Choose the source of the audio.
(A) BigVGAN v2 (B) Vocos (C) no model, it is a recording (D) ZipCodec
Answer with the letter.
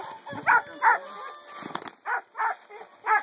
C